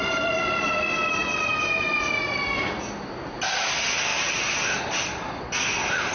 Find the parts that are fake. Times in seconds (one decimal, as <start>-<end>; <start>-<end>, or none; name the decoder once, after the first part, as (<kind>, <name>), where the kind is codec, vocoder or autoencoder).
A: 0.0-1.2 (vocoder, BigVGAN v2); 3.6-6.1